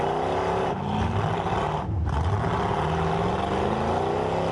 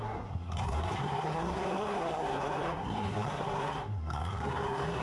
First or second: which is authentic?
first